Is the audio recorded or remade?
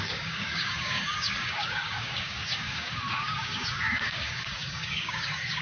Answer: remade